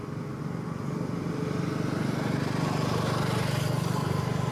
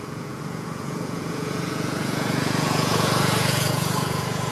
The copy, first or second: second